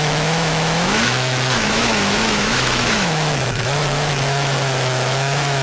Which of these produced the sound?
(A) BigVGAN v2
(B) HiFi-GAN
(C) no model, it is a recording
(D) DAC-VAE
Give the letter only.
D